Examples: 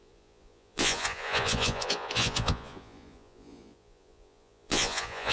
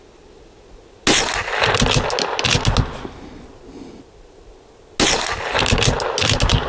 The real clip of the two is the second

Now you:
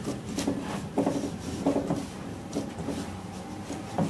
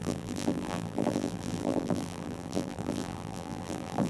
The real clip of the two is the first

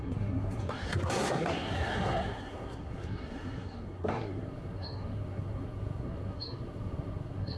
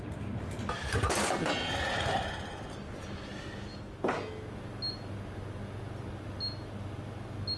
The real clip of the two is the second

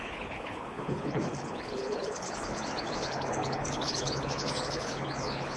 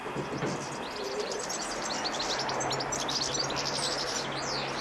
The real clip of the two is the second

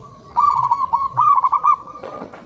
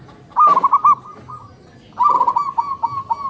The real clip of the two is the second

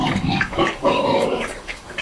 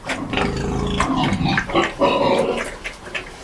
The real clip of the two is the second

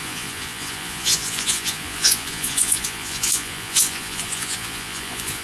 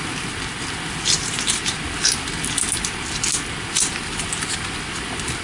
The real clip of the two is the second